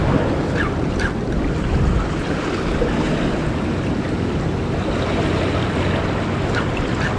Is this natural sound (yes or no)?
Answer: yes